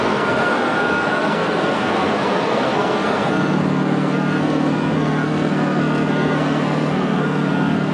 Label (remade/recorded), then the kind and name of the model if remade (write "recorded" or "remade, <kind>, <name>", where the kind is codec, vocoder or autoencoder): remade, codec, SNAC